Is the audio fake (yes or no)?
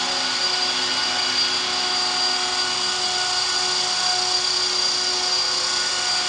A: no